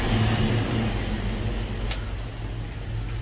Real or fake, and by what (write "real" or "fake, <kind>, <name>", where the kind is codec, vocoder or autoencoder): real